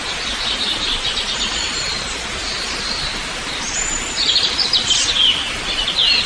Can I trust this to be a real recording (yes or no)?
yes